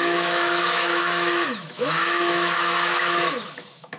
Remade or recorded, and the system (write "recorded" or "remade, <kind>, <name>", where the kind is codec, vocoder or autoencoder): remade, autoencoder, DAC-VAE